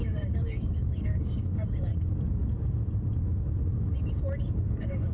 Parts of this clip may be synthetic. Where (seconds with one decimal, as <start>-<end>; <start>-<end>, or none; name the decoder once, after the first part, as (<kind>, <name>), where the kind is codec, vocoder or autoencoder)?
0.0-1.9 (codec, DAC); 4.4-5.1